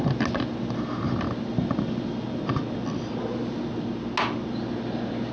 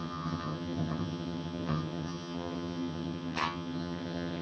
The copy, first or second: second